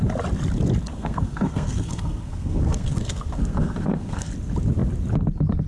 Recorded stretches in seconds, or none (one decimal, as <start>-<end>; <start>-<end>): 0.0-0.9; 4.3-5.7